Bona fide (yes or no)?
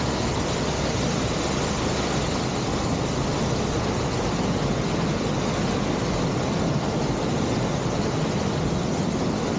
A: yes